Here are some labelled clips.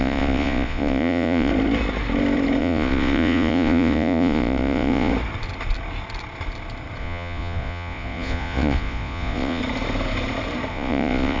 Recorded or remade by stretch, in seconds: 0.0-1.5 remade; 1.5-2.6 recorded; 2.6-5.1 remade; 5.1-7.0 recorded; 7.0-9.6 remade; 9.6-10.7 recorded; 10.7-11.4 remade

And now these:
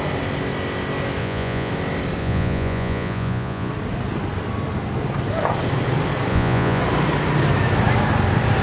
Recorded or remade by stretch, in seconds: 0.0-1.2 recorded; 1.2-1.7 remade; 1.7-2.2 recorded; 2.2-3.7 remade; 3.7-6.3 recorded; 6.3-6.8 remade; 6.8-8.6 recorded

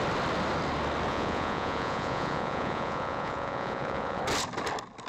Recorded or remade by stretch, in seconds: 0.0-1.1 recorded; 1.1-4.2 remade; 4.2-5.1 recorded

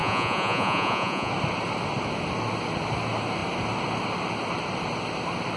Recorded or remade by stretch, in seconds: 0.0-1.3 remade; 1.3-5.6 recorded

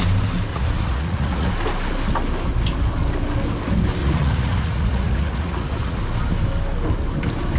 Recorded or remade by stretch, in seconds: 0.0-0.5 recorded; 0.5-1.5 remade; 1.5-4.0 recorded; 4.0-6.0 remade; 6.0-7.6 recorded

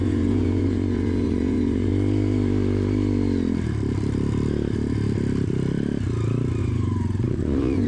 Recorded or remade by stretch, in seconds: 0.0-1.9 remade; 1.9-6.6 recorded; 6.6-7.9 remade